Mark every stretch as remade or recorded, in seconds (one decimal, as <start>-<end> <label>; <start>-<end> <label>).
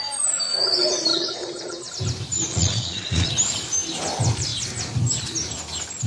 0.0-1.1 recorded; 1.1-1.9 remade; 1.9-2.5 recorded; 2.5-3.3 remade; 3.3-6.1 recorded